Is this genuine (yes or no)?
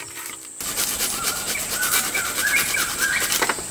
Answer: no